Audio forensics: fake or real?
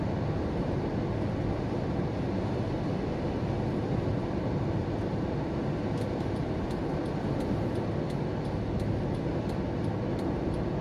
real